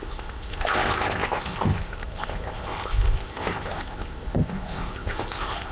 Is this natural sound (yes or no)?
no